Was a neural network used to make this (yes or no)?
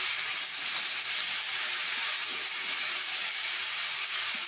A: no